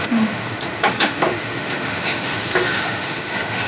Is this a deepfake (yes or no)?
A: yes